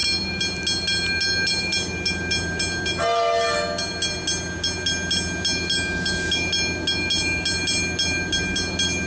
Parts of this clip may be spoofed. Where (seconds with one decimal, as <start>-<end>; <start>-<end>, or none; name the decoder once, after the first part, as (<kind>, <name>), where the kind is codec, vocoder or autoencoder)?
none